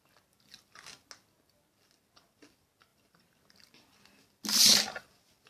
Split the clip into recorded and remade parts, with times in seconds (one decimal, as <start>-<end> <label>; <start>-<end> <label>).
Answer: 0.0-5.5 recorded